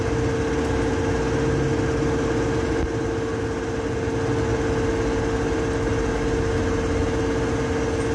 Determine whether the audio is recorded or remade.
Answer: recorded